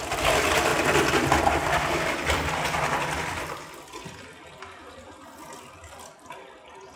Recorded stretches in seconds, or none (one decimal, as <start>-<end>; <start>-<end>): 0.0-7.0